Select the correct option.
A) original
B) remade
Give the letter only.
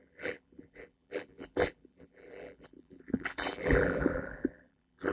B